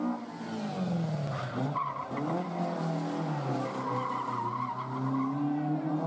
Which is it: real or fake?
real